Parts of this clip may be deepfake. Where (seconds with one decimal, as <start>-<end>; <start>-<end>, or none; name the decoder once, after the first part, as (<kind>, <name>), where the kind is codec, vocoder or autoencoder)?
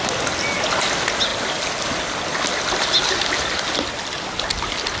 none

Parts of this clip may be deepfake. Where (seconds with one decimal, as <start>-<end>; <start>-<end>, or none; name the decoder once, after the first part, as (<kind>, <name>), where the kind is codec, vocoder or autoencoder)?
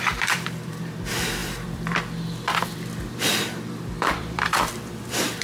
0.0-5.4 (vocoder, BigVGAN v2)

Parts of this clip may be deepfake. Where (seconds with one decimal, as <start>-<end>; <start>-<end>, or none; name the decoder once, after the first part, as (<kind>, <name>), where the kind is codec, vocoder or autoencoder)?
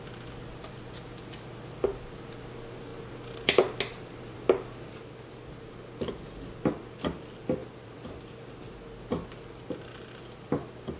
7.6-8.5 (vocoder, BigVGAN v2)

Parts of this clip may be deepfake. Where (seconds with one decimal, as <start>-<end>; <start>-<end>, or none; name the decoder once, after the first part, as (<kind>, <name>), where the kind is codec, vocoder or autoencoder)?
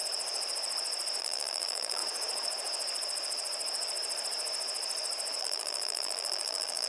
1.2-2.0 (vocoder, BigVGAN v2); 5.4-6.9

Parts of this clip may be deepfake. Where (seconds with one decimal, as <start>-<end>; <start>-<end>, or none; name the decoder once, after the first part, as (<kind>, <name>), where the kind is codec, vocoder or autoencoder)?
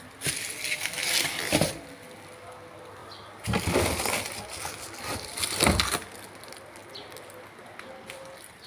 none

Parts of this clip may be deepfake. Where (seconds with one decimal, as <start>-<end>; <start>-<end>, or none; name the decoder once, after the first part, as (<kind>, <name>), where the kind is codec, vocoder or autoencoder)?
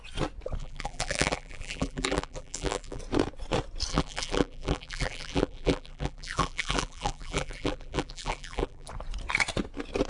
0.6-3.0 (vocoder, BigVGAN v2); 3.9-8.9